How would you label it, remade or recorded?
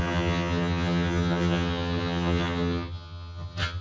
remade